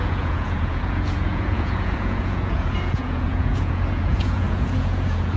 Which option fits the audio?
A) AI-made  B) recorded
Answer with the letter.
A